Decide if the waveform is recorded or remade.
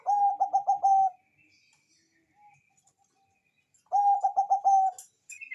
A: recorded